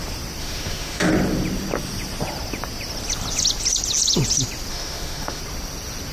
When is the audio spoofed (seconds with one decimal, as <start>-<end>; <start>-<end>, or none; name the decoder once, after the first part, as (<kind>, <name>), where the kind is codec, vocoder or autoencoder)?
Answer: 0.4-1.1 (autoencoder, DAC-VAE); 4.7-5.4